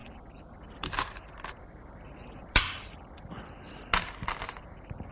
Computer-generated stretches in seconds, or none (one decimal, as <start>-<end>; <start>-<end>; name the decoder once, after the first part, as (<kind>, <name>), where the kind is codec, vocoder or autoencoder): 0.0-3.1 (vocoder, BigVGAN v2)